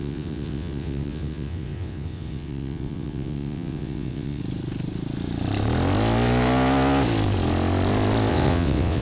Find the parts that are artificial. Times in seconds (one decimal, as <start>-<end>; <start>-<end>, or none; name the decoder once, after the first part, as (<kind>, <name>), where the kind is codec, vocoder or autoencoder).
0.0-4.4 (vocoder, WaveNeXt); 8.3-9.0